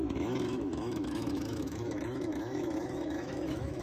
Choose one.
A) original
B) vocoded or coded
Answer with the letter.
B